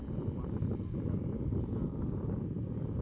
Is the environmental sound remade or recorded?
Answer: recorded